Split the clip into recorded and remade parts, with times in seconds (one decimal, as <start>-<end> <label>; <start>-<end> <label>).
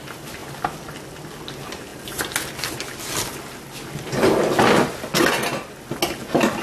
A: 0.0-6.6 recorded